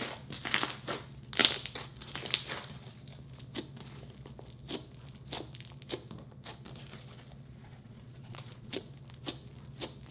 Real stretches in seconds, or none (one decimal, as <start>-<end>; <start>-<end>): 0.0-7.6; 8.9-10.1